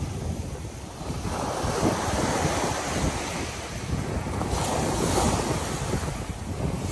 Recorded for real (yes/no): yes